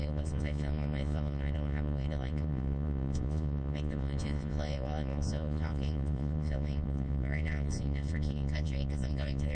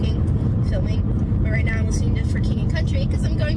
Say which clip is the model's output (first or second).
first